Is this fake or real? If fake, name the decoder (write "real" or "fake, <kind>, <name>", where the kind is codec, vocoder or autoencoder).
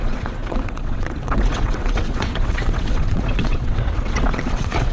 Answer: fake, vocoder, WaveNeXt